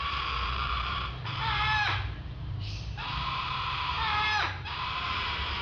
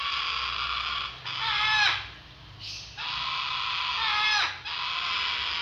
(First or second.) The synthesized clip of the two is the first